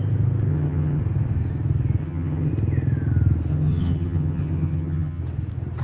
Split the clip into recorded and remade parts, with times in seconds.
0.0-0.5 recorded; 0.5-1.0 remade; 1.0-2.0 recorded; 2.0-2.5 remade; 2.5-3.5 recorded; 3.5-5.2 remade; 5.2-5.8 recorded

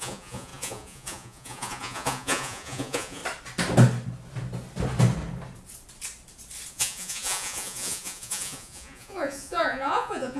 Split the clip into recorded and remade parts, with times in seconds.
0.0-3.2 remade; 3.2-6.7 recorded; 6.7-10.4 remade

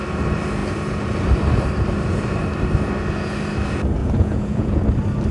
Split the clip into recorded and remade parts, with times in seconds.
0.0-4.0 recorded; 4.0-4.8 remade; 4.8-5.3 recorded